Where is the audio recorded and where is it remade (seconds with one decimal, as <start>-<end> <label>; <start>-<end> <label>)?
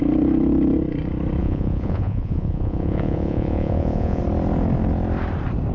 0.0-1.4 recorded; 1.4-4.2 remade; 4.2-5.7 recorded